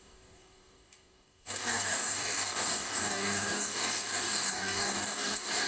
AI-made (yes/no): yes